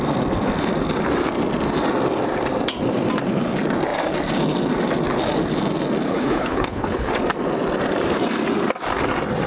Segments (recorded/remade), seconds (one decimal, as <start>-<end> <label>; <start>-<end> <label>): 0.0-6.1 recorded; 6.1-7.1 remade; 7.1-9.5 recorded